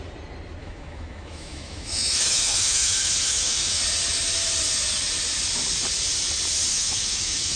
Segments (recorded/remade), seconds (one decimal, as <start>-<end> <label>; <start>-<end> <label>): 0.0-0.6 recorded; 0.6-3.8 remade; 3.8-6.7 recorded; 6.7-7.6 remade